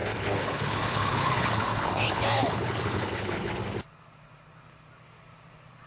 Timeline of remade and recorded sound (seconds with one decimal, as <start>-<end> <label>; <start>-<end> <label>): 0.0-3.5 remade; 3.5-5.9 recorded